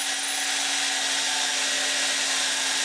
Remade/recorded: recorded